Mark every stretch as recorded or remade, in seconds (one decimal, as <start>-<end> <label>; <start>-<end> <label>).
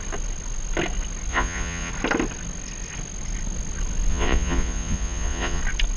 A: 0.0-1.3 recorded; 1.3-1.9 remade; 1.9-4.1 recorded; 4.1-5.6 remade; 5.6-6.0 recorded